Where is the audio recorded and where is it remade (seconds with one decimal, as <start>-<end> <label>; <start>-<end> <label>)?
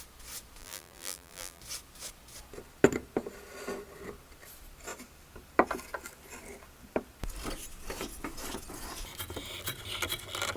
0.0-0.6 recorded; 0.6-1.6 remade; 1.6-10.6 recorded